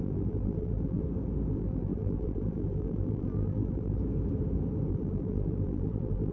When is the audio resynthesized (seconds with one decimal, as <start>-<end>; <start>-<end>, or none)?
0.0-1.0; 1.5-4.0; 4.9-6.3